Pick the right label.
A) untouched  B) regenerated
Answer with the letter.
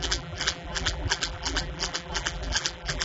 B